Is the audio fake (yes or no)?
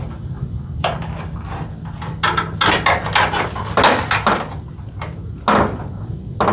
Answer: no